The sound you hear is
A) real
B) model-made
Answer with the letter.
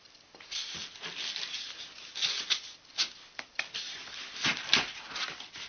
A